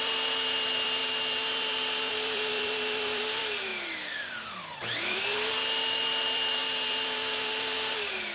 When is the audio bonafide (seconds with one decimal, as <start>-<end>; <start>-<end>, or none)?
none